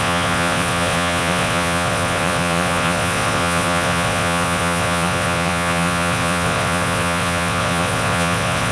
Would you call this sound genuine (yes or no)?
no